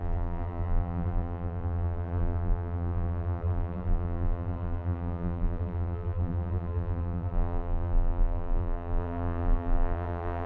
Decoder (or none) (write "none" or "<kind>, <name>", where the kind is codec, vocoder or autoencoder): vocoder, BigVGAN v2